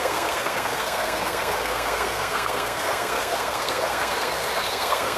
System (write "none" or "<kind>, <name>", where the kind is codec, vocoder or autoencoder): codec, SNAC